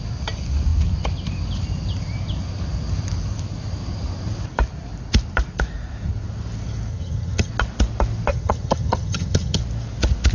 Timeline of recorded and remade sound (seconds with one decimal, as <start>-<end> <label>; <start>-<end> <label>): 0.0-6.9 recorded; 6.9-7.5 remade; 7.5-8.3 recorded; 8.3-9.6 remade; 9.6-10.3 recorded